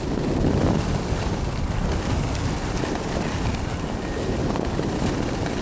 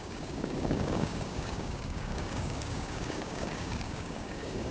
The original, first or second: first